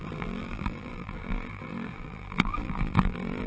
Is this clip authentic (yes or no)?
no